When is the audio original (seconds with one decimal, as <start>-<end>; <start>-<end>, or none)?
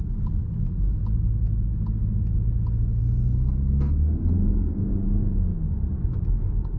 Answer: 0.0-3.0; 4.9-6.8